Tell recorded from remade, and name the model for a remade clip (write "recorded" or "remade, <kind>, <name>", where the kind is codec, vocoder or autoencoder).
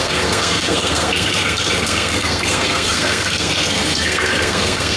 remade, codec, SNAC